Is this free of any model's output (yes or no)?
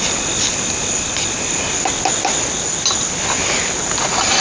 yes